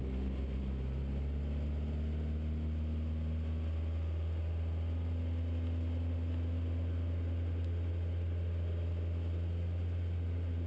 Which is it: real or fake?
real